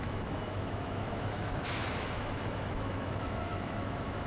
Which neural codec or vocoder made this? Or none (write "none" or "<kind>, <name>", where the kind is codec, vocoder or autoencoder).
autoencoder, DAC-VAE